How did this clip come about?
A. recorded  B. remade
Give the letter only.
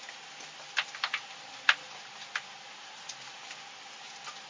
A